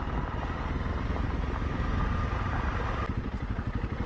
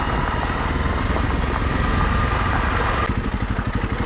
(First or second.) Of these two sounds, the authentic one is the second